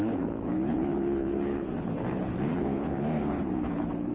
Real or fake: fake